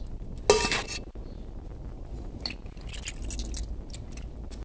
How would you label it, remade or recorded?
recorded